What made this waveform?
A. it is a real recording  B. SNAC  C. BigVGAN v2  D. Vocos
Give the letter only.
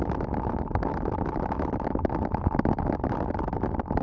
A